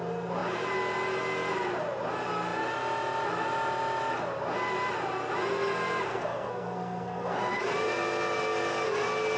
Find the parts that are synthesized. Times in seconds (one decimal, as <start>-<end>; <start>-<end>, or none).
6.1-7.6